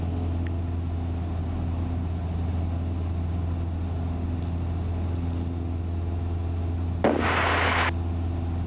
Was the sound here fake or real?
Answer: real